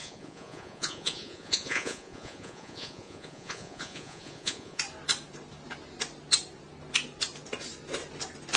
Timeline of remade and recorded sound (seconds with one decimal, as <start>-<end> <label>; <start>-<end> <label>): 0.0-4.8 remade; 4.8-8.6 recorded